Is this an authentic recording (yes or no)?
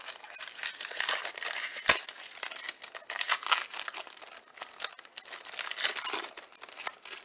yes